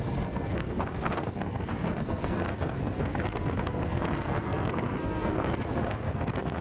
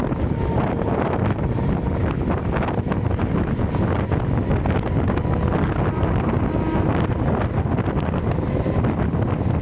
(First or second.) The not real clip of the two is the first